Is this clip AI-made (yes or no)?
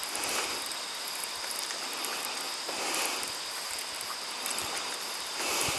no